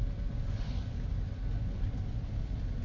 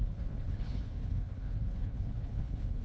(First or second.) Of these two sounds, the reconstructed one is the second